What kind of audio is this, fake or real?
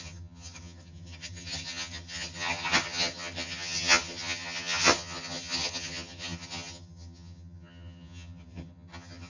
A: fake